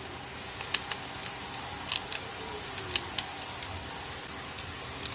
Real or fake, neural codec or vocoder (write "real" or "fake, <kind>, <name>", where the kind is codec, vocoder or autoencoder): real